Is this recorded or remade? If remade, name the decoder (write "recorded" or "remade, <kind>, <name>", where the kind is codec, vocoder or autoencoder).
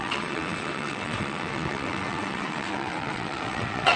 remade, vocoder, WaveNeXt